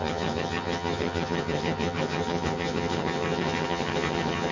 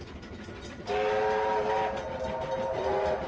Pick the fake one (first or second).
first